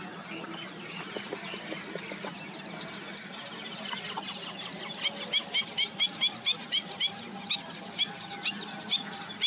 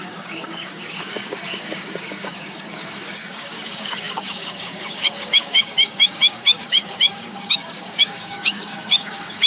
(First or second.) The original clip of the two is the first